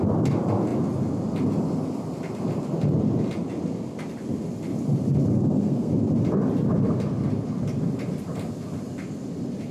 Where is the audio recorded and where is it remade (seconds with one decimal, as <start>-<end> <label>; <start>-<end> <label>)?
0.0-5.3 recorded; 5.3-5.9 remade; 5.9-9.7 recorded